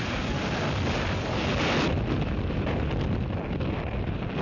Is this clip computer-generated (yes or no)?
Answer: no